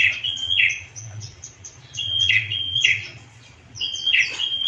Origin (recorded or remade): remade